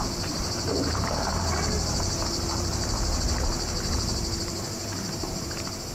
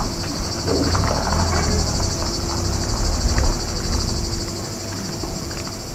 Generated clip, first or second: first